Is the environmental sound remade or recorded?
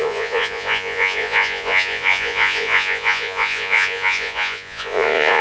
remade